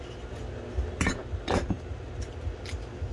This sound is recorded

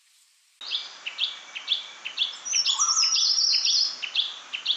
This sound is recorded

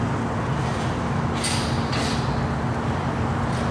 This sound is recorded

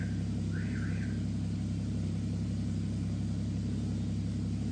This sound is recorded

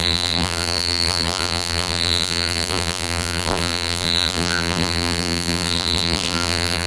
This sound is remade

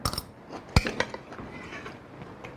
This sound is recorded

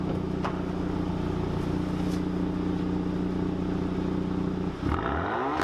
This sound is recorded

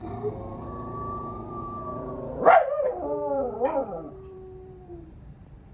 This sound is remade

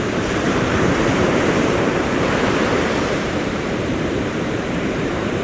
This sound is remade